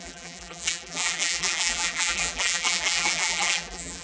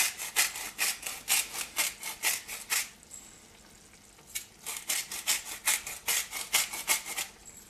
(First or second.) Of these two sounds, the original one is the second